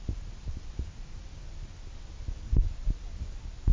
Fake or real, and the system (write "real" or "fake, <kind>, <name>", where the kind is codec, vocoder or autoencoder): real